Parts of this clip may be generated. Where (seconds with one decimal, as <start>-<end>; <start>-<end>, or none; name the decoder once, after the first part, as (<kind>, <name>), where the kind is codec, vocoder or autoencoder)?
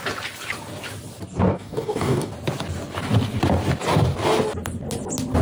1.5-2.3 (codec, DAC)